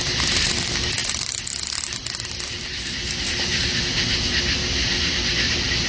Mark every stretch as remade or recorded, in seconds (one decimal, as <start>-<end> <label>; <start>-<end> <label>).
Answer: 0.0-1.0 recorded; 1.0-2.7 remade; 2.7-4.6 recorded; 4.6-5.9 remade